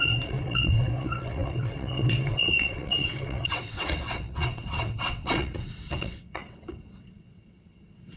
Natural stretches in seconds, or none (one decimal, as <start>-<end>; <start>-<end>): none